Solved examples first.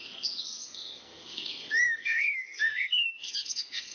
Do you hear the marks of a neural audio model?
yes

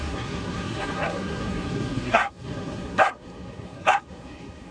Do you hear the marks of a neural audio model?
yes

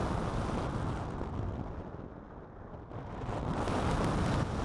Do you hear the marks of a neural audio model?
no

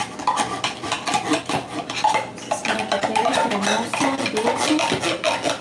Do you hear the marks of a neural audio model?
no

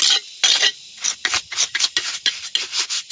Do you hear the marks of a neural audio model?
no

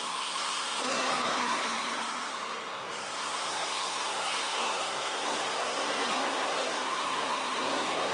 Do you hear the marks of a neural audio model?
yes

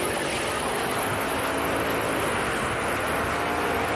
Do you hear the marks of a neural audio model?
no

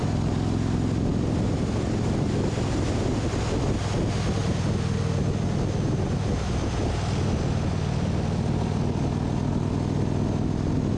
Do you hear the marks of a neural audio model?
no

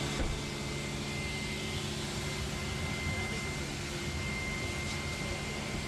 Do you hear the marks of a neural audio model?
no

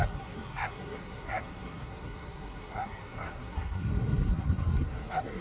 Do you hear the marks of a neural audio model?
yes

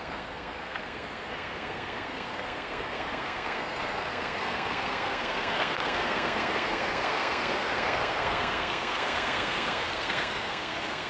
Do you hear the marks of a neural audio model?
yes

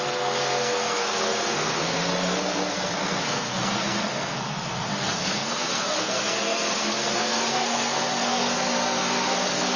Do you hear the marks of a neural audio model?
yes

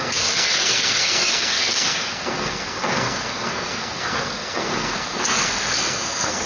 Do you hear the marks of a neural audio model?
yes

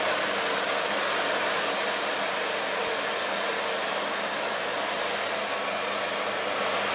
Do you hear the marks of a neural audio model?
no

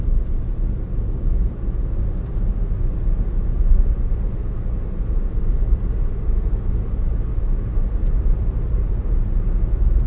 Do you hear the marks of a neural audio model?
no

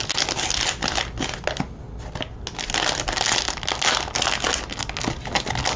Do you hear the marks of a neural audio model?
no